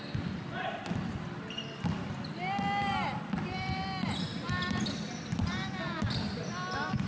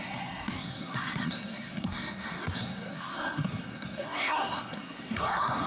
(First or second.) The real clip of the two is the first